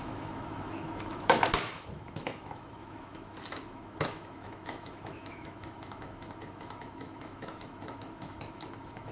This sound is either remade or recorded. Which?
remade